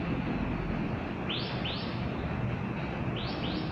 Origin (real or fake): real